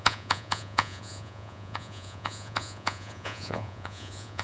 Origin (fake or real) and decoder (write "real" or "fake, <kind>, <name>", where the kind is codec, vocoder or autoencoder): fake, vocoder, Vocos